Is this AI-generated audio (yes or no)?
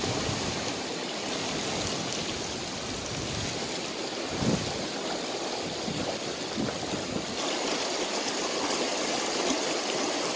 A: no